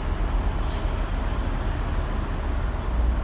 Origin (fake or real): real